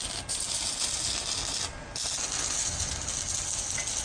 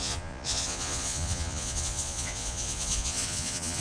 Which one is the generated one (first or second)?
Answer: second